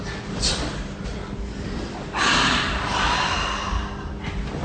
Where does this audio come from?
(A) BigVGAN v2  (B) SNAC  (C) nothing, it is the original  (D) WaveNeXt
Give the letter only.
C